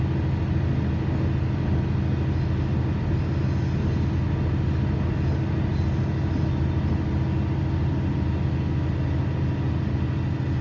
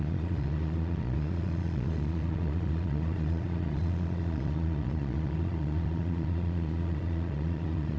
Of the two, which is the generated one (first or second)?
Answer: second